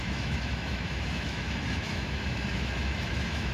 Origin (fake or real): fake